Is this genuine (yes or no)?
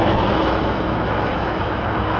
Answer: no